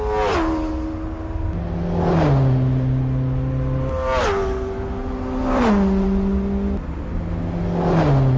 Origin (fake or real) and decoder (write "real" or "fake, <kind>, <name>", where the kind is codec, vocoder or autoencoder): real